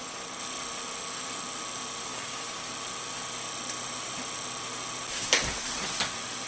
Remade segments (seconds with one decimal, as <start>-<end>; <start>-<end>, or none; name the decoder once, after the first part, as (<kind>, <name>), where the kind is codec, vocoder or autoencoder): 2.1-2.7 (codec, DAC)